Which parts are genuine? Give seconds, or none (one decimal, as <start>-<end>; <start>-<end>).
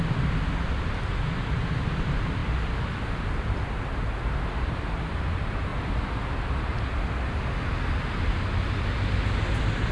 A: 0.0-9.9